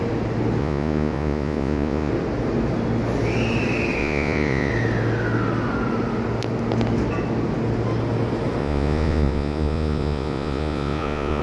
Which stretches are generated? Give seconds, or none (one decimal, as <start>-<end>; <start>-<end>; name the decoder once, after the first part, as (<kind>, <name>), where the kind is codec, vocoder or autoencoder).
0.6-2.1 (vocoder, Vocos); 4.0-4.7; 8.6-11.4